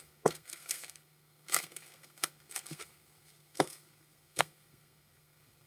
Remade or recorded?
remade